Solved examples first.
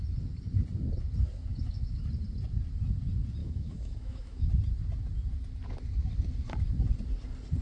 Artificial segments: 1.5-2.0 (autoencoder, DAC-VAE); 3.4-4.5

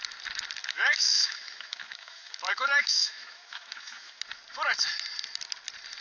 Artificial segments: 0.6-4.2 (autoencoder, DAC-VAE)

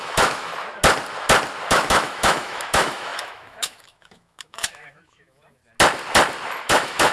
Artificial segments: 0.0-0.5 (autoencoder, DAC-VAE); 1.7-5.6; 6.6-7.1